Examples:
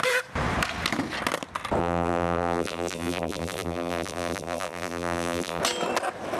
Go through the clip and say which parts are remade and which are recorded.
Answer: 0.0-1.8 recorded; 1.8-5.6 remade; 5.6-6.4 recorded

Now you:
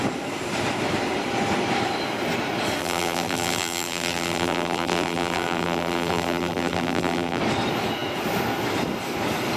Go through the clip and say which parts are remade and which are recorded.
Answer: 0.0-2.8 recorded; 2.8-7.4 remade; 7.4-9.6 recorded

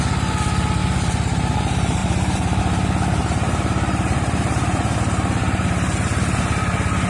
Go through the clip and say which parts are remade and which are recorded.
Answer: 0.0-0.8 recorded; 0.8-1.6 remade; 1.6-2.0 recorded; 2.0-2.6 remade; 2.6-3.2 recorded; 3.2-5.0 remade; 5.0-5.4 recorded; 5.4-6.2 remade; 6.2-7.1 recorded